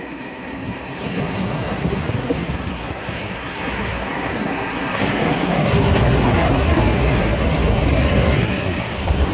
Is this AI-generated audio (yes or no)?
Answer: yes